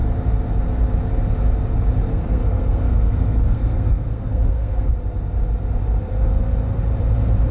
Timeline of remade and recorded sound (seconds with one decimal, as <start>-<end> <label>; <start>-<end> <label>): 0.0-2.1 recorded; 2.1-4.9 remade; 4.9-7.5 recorded